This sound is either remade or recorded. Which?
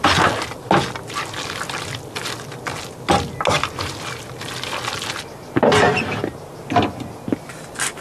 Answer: recorded